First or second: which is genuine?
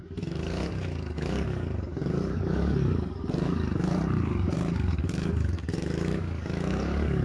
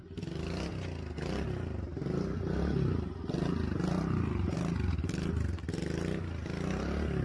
second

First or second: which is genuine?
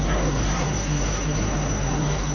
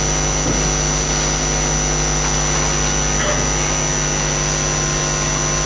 second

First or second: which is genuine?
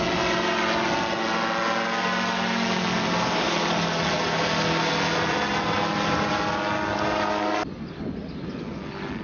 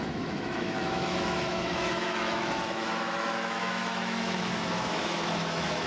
first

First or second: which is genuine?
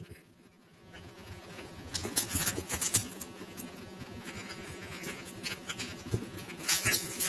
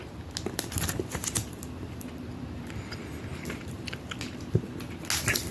second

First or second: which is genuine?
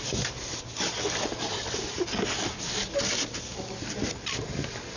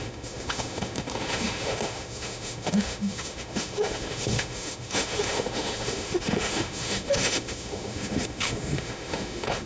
first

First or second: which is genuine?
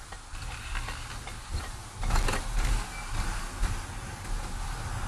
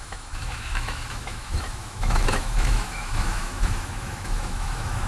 first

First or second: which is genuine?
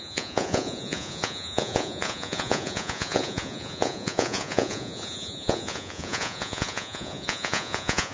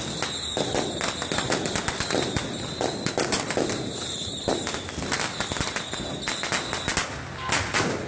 second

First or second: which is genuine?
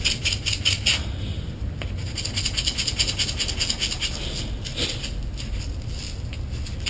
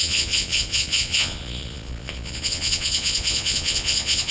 first